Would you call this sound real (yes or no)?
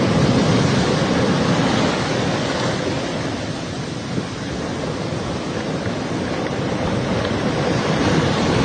yes